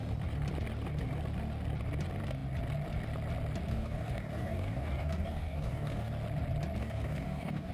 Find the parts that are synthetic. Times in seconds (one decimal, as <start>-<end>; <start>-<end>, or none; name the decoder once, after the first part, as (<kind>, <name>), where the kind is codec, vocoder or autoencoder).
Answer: 3.7-6.1 (codec, DAC); 6.8-7.7